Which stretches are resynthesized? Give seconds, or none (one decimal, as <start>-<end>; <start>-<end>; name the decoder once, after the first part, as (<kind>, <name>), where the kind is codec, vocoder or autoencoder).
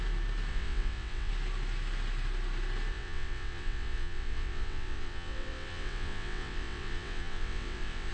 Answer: 0.5-1.3 (vocoder, WaveNeXt); 2.9-8.1